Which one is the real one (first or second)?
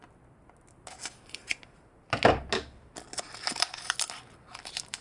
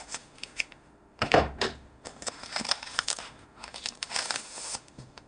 first